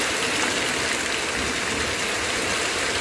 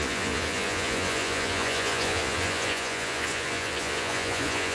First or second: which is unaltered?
first